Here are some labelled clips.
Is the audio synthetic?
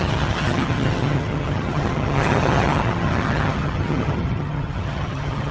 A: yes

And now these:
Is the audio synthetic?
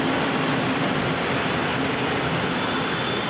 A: no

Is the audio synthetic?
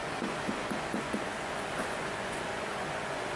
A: yes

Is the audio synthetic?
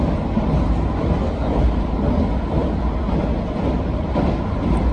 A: no